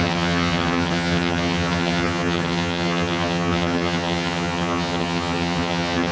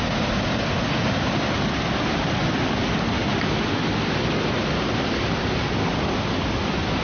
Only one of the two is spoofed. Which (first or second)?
first